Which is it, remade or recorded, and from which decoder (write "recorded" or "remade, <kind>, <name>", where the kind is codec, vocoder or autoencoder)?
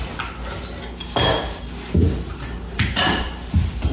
recorded